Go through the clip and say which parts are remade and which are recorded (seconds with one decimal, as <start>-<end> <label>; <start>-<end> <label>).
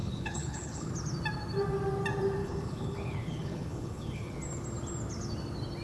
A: 0.0-0.9 remade; 0.9-2.4 recorded; 2.4-4.3 remade; 4.3-5.8 recorded